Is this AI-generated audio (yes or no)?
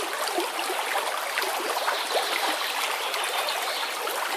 no